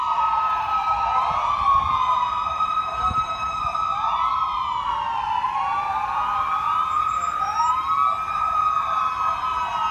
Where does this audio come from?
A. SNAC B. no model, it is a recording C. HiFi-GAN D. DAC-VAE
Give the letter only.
B